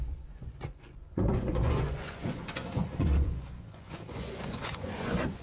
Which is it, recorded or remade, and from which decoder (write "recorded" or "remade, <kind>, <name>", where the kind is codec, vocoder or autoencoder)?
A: remade, vocoder, Vocos